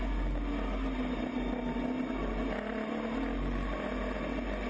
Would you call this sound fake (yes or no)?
no